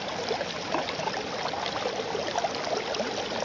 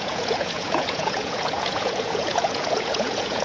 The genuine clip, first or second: first